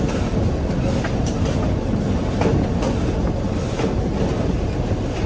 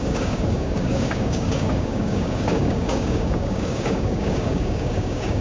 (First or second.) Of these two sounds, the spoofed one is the second